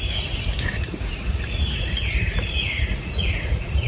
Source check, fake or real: fake